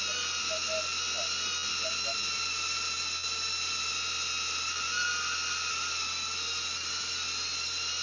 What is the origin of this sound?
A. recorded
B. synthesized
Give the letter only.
A